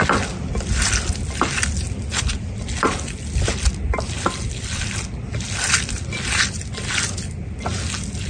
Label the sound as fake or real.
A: real